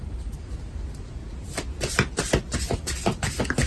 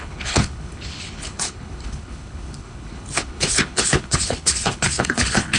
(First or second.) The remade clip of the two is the second